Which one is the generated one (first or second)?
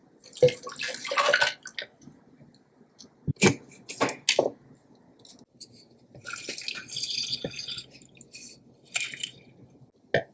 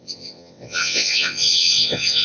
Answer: second